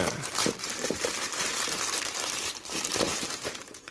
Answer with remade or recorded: remade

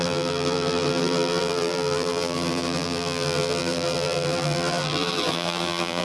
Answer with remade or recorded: remade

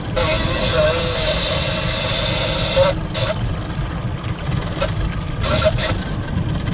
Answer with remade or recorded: remade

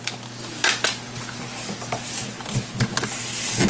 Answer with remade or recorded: recorded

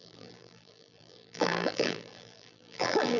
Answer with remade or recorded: remade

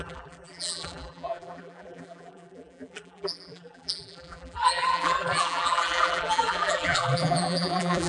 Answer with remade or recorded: remade